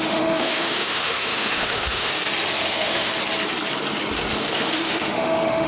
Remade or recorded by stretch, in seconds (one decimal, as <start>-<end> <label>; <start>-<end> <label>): 0.0-2.1 remade; 2.1-2.7 recorded; 2.7-3.1 remade; 3.1-4.4 recorded; 4.4-5.7 remade